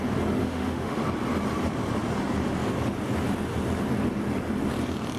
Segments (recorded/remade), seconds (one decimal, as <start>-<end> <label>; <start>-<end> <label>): 0.0-0.4 recorded; 0.4-1.0 remade; 1.0-5.2 recorded

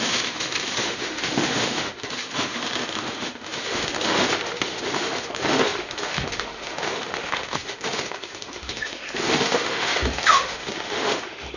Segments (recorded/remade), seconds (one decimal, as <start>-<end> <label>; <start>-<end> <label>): 0.0-11.6 remade

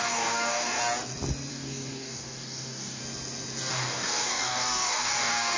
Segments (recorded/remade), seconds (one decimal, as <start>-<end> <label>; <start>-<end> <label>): 0.0-0.8 remade; 0.8-1.5 recorded; 1.5-3.0 remade; 3.0-3.7 recorded; 3.7-5.6 remade

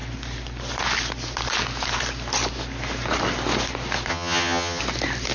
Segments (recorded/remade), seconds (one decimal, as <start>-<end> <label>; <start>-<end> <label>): 0.0-4.1 recorded; 4.1-4.8 remade; 4.8-5.3 recorded

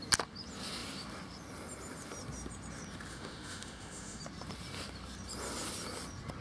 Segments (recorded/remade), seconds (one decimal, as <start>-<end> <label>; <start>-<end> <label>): 0.0-3.1 recorded; 3.1-4.2 remade; 4.2-6.4 recorded

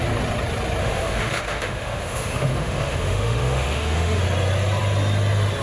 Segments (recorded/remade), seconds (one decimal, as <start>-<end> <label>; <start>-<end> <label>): 0.0-0.8 recorded; 0.8-4.2 remade; 4.2-5.6 recorded

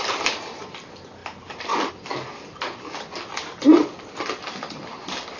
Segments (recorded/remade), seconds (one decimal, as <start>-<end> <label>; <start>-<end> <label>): 0.0-5.4 recorded